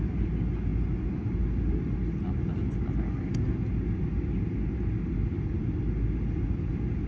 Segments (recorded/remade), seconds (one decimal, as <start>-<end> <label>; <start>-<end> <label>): 0.0-7.1 recorded